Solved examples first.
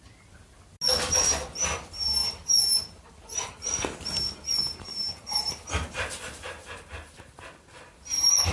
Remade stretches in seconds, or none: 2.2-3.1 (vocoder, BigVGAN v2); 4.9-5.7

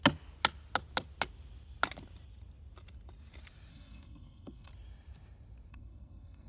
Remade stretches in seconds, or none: 3.7-4.7 (codec, SNAC); 5.7-6.5

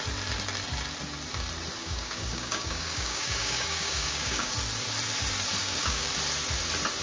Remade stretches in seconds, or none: 1.8-4.5 (codec, DAC); 5.6-6.1

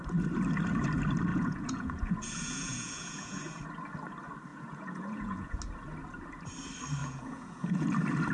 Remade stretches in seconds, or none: 1.3-3.5 (vocoder, Vocos); 4.5-5.6; 7.0-7.9

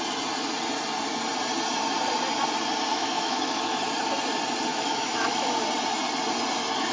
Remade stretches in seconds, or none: 2.9-3.8 (autoencoder, DAC-VAE); 4.7-5.5

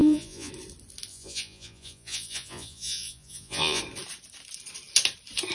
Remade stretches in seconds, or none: 0.0-0.5 (vocoder, Vocos); 1.1-3.8

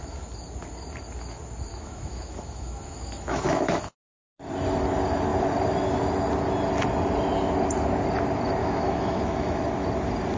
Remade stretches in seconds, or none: 1.7-4.0 (autoencoder, DAC-VAE); 8.6-9.6